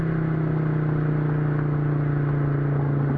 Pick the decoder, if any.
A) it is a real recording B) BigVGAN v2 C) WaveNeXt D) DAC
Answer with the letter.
A